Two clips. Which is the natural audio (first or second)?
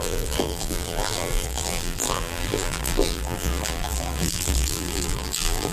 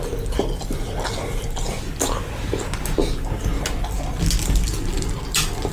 second